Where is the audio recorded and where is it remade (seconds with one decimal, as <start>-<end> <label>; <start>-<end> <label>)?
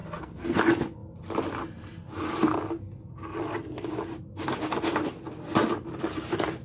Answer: 0.0-0.6 remade; 0.6-6.6 recorded